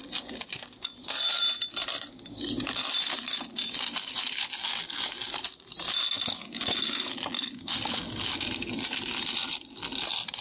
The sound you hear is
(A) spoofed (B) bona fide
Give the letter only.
B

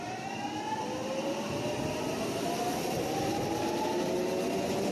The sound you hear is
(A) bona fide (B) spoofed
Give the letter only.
A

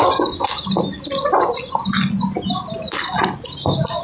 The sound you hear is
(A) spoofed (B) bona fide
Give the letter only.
B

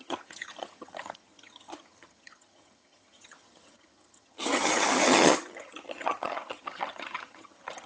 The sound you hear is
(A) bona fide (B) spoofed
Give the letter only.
B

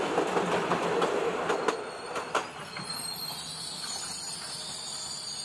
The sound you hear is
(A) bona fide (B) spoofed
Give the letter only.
A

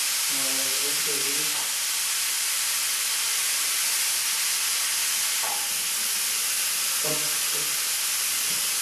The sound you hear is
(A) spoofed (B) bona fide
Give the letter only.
B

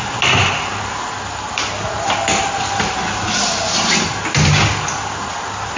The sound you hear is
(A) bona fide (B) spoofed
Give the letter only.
A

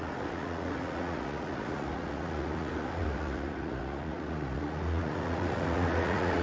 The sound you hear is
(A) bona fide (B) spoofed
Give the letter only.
B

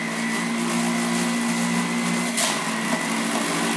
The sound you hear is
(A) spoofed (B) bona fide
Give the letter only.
B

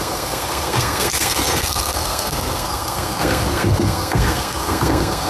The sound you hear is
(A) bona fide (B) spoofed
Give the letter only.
B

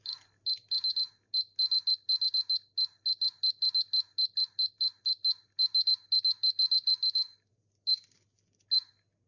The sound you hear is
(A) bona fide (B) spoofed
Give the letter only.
A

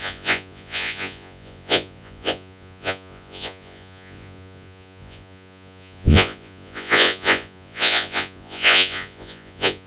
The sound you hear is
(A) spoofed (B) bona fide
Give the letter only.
A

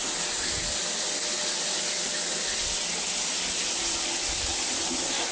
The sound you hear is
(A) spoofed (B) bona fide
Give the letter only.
B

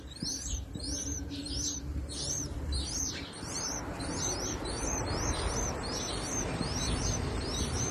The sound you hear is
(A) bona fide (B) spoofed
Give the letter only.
B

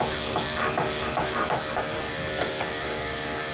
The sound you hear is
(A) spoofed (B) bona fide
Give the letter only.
A